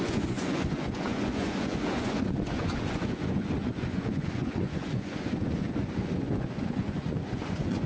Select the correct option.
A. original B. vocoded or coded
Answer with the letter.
B